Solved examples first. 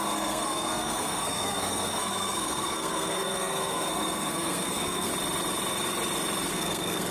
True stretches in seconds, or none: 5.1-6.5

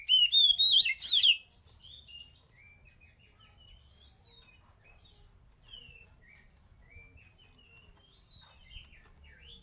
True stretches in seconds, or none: 0.0-9.6

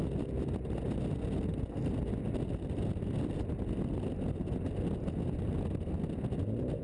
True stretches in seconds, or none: 0.0-6.8

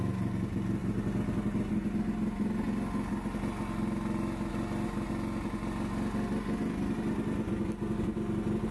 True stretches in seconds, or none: 0.0-8.7

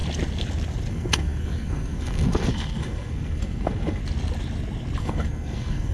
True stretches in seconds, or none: 0.0-0.9; 4.0-5.0